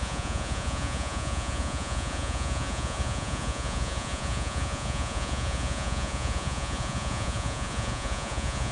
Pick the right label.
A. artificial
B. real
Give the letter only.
A